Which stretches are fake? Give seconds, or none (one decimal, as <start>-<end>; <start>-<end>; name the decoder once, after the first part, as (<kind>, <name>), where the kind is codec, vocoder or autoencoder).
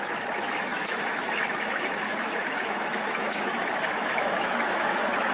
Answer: 0.0-5.3 (autoencoder, DAC-VAE)